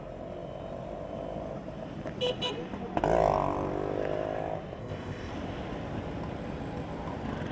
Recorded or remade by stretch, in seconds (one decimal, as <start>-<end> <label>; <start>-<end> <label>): 0.0-4.8 recorded; 4.8-5.3 remade; 5.3-7.5 recorded

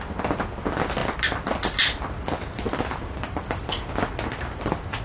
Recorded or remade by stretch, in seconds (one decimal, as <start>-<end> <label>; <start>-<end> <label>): 0.0-5.0 recorded

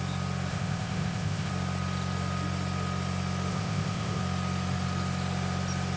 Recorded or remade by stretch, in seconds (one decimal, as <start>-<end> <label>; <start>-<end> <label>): 0.0-0.5 recorded; 0.5-1.5 remade; 1.5-3.5 recorded; 3.5-4.2 remade; 4.2-6.0 recorded

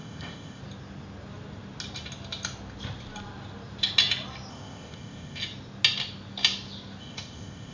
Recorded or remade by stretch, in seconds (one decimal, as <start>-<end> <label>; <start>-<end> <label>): 0.0-0.6 remade; 0.6-4.5 recorded; 4.5-5.4 remade; 5.4-7.0 recorded; 7.0-7.7 remade

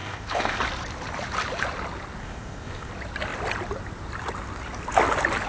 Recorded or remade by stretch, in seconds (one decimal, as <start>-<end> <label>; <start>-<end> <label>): 0.0-0.6 remade; 0.6-2.2 recorded; 2.2-2.9 remade; 2.9-5.5 recorded

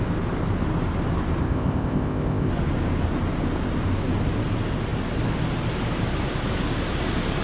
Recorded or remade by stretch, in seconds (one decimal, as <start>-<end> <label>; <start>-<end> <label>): 0.0-1.4 recorded; 1.4-2.5 remade; 2.5-7.4 recorded

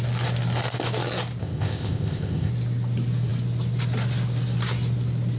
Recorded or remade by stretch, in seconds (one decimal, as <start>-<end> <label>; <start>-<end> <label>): 0.0-1.4 recorded; 1.4-2.5 remade; 2.5-5.4 recorded